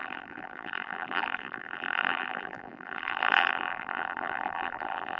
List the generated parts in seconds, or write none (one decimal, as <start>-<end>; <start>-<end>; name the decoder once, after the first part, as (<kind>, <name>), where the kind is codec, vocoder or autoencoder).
0.0-5.2 (vocoder, BigVGAN v2)